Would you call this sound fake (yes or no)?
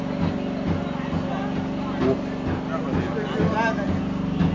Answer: no